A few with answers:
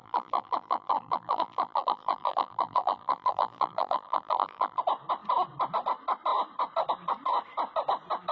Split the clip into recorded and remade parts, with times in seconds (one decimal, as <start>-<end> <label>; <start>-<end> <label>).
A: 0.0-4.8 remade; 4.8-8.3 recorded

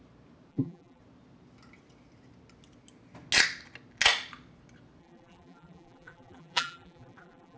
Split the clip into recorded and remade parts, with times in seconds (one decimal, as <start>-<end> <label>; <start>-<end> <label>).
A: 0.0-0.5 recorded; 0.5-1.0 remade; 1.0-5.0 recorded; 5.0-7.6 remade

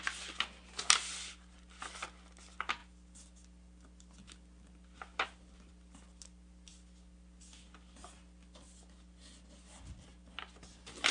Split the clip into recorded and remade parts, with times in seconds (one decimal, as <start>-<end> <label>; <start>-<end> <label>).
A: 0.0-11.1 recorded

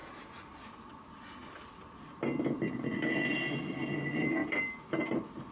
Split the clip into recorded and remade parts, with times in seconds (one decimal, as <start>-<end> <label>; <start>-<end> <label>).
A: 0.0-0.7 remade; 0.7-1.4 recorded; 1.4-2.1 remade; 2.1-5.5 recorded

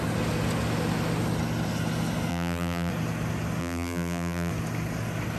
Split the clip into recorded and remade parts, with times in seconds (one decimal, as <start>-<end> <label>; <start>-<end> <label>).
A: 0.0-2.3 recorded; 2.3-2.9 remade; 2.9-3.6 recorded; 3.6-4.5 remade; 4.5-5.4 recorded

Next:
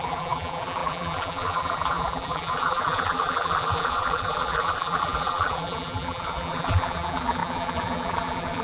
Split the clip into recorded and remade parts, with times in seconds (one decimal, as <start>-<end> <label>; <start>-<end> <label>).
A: 0.0-8.6 remade

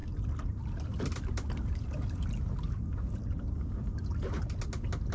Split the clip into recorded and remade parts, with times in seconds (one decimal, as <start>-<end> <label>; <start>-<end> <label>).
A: 0.0-3.1 recorded; 3.1-4.1 remade; 4.1-5.1 recorded